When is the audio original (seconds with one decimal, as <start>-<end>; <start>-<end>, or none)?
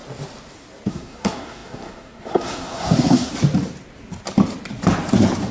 0.0-0.9; 3.3-5.5